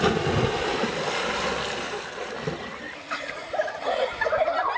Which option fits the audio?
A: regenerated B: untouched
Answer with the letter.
B